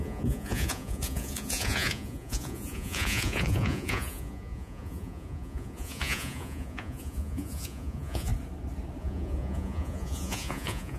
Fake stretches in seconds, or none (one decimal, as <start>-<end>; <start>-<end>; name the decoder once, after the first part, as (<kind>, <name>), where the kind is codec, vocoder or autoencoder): 0.0-8.3 (vocoder, Vocos); 9.0-11.0